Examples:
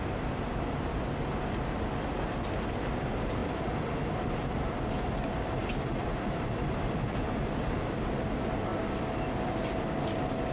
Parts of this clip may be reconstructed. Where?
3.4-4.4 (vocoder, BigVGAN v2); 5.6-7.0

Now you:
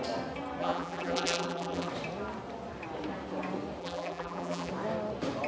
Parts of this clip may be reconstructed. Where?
0.6-1.9 (vocoder, BigVGAN v2); 3.8-4.7

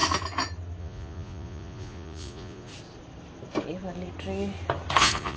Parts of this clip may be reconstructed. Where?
0.8-2.7 (vocoder, Vocos); 5.0-5.4

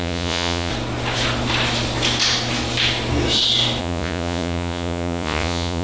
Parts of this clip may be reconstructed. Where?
0.0-0.7 (vocoder, Vocos); 3.8-5.8